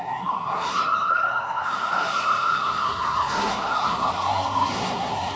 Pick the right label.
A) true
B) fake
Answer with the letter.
B